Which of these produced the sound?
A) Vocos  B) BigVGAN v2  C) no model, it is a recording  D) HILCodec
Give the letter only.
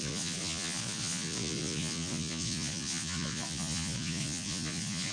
A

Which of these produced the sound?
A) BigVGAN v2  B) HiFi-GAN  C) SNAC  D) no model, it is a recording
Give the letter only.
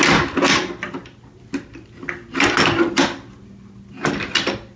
D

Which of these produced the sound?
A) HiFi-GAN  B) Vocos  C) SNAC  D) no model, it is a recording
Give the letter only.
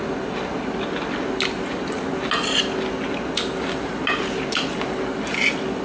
D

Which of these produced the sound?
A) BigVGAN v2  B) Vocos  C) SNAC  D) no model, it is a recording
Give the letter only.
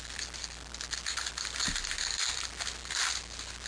D